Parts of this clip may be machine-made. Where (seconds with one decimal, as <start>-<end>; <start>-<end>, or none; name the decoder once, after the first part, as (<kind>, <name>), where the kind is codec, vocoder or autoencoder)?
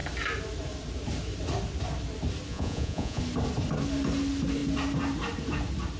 2.5-3.2 (vocoder, Vocos)